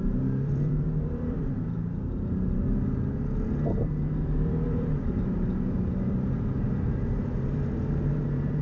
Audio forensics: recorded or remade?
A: remade